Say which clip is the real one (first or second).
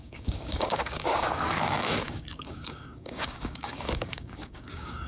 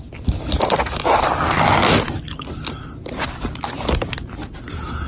second